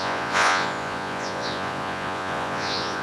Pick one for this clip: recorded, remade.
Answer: remade